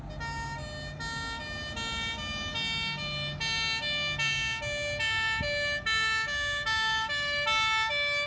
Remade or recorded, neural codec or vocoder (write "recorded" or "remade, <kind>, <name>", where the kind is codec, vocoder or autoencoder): recorded